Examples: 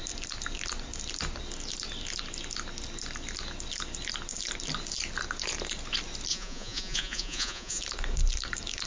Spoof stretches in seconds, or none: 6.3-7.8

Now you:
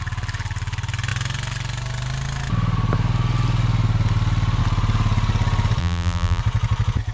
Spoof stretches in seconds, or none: 5.8-6.4

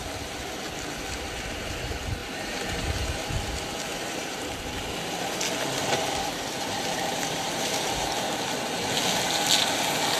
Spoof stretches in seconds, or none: 2.2-2.8; 3.9-4.8; 5.8-8.3

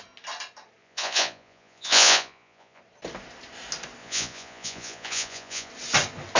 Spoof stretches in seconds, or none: 0.8-2.8; 4.0-5.7

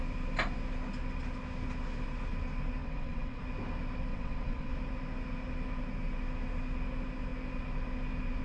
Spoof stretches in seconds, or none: 2.8-3.4; 4.1-4.7

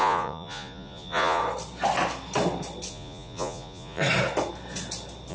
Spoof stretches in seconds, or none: 0.0-1.4; 2.9-4.0